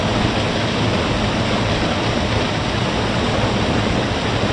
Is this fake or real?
real